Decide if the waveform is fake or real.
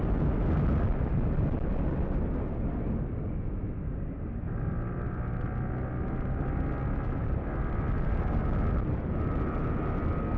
real